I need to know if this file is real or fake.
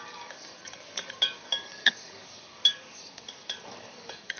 fake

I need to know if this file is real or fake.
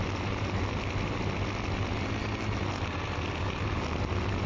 real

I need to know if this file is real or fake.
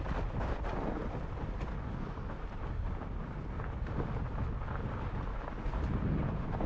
real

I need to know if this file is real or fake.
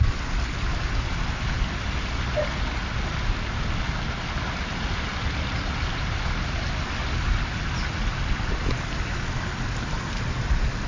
real